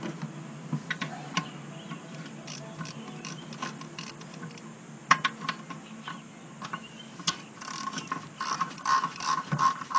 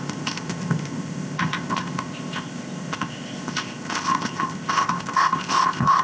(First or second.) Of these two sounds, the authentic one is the first